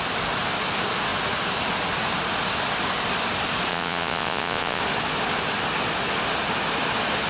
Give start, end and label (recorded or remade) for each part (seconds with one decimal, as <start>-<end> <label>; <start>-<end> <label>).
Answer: 0.0-3.7 recorded; 3.7-4.8 remade; 4.8-7.3 recorded